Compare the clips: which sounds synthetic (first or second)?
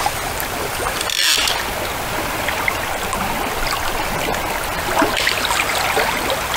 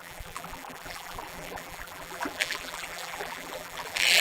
second